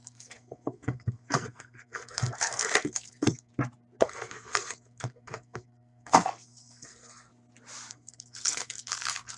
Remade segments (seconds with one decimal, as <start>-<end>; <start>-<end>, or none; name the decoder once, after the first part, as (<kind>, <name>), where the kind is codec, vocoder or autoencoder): 0.0-3.5 (codec, SNAC); 4.0-7.3; 7.9-9.4